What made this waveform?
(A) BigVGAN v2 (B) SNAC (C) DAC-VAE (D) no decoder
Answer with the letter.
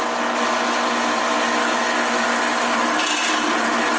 D